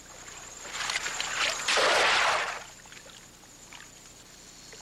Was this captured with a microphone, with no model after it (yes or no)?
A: yes